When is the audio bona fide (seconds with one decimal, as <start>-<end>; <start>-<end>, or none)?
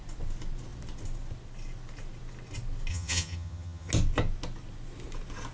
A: 0.0-2.9; 3.9-5.5